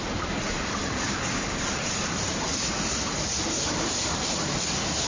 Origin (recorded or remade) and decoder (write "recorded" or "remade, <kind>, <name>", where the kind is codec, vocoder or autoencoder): remade, vocoder, BigVGAN v2